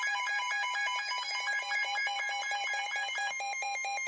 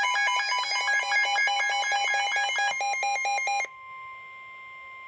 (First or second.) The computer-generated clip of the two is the first